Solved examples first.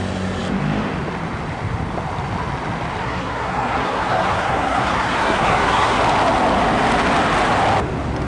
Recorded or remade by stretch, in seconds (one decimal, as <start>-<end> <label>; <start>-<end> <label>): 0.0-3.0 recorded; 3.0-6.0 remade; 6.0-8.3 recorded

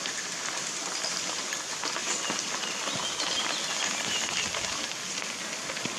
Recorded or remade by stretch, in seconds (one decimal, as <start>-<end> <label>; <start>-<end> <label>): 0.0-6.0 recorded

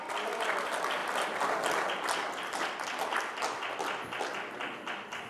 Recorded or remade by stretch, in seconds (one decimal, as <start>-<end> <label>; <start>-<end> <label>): 0.0-5.3 recorded

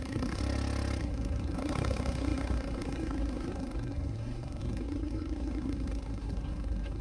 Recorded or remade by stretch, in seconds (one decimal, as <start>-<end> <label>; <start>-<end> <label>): 0.0-0.4 remade; 0.4-1.0 recorded; 1.0-7.0 remade

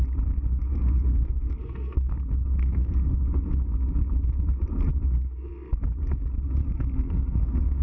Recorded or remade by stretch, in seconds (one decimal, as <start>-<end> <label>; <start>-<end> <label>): 0.0-0.7 recorded; 0.7-2.1 remade; 2.1-2.6 recorded; 2.6-3.2 remade; 3.2-6.6 recorded; 6.6-7.8 remade

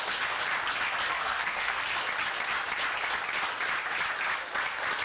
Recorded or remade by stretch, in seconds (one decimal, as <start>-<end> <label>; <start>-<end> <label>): 0.0-1.1 recorded; 1.1-1.8 remade; 1.8-5.0 recorded